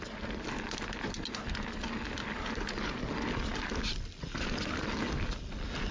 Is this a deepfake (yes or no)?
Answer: no